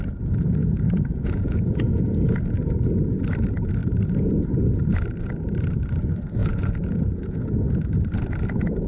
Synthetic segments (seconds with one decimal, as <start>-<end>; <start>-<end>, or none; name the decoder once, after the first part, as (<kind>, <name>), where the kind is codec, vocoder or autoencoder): 0.6-2.1 (vocoder, Vocos); 6.4-7.4